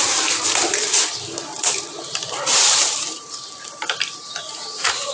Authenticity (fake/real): fake